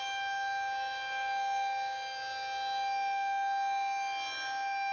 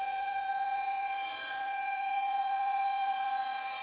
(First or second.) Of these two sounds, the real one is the first